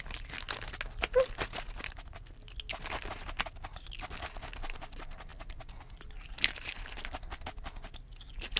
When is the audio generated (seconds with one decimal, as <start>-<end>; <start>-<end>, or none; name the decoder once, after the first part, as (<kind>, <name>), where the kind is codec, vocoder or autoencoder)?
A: none